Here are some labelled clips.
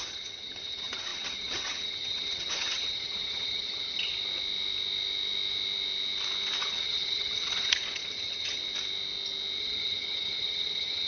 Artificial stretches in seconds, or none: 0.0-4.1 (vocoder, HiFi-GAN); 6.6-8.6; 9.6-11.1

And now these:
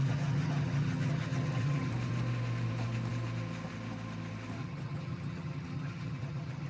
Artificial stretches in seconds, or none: 0.0-1.9 (vocoder, HiFi-GAN); 4.6-6.7

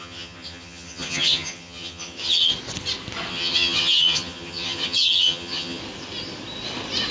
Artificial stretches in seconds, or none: 0.0-2.5 (vocoder, HiFi-GAN); 3.3-5.8